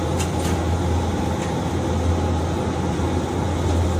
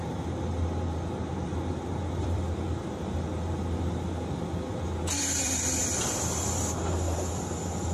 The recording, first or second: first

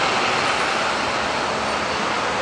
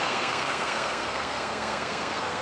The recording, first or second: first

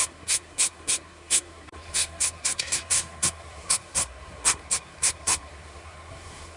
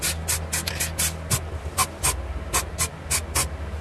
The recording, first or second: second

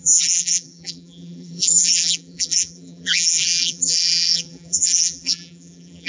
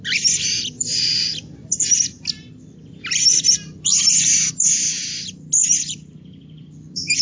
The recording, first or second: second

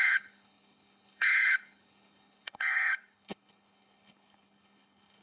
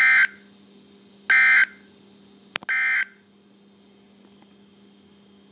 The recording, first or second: second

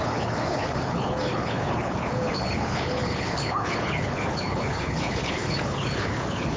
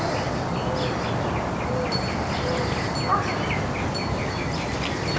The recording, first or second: second